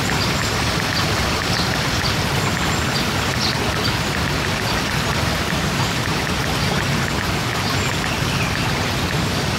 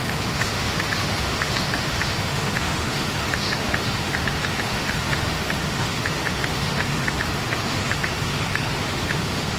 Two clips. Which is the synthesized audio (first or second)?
second